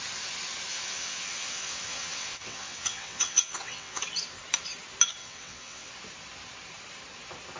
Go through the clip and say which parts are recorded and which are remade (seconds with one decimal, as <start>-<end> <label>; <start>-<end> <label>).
0.0-0.7 recorded; 0.7-4.0 remade; 4.0-5.2 recorded; 5.2-5.9 remade; 5.9-7.6 recorded